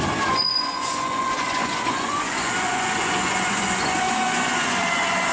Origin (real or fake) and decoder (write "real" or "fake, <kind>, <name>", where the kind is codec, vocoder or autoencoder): fake, vocoder, Vocos